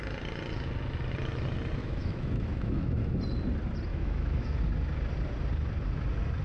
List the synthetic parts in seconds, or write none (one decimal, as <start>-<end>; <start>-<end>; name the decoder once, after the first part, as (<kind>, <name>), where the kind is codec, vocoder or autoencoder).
1.8-3.2 (autoencoder, DAC-VAE); 3.9-4.6